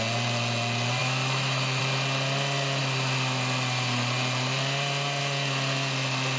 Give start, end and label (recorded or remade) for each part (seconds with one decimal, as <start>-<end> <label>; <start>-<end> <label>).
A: 0.0-1.0 recorded; 1.0-1.8 remade; 1.8-6.4 recorded